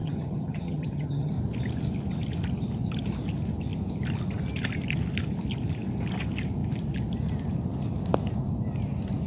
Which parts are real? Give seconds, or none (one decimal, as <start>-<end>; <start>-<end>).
1.3-9.3